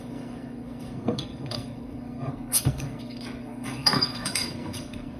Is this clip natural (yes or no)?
no